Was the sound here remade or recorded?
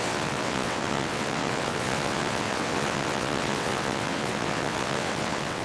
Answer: remade